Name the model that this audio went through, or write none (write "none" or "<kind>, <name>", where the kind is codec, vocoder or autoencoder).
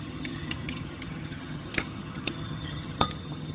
vocoder, HiFi-GAN